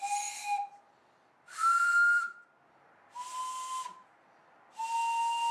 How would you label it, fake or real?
real